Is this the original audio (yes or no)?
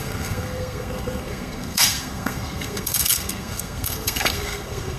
no